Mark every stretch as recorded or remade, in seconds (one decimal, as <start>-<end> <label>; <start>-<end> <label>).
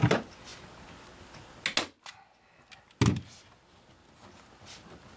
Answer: 0.0-5.2 recorded